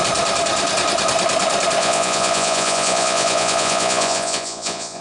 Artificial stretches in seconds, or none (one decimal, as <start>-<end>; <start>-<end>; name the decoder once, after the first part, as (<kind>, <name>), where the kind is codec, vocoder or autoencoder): 1.8-5.0 (vocoder, Vocos)